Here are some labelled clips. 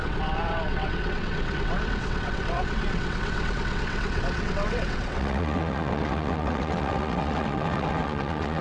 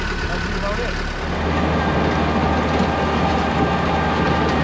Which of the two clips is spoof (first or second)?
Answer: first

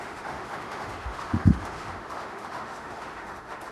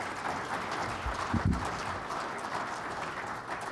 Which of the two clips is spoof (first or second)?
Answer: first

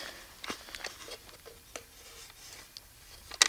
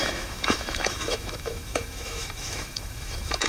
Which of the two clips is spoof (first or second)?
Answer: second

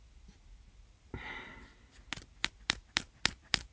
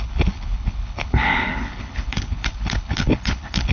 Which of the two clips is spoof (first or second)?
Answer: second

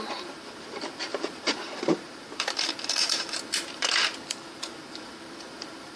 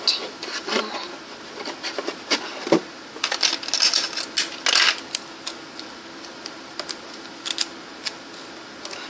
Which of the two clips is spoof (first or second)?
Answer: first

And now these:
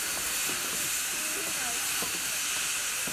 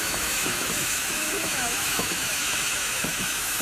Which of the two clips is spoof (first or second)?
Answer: second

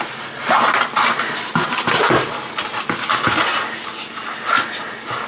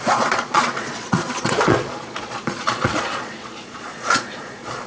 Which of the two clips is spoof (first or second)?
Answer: second